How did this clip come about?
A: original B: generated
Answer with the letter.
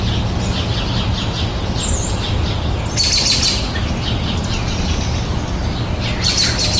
A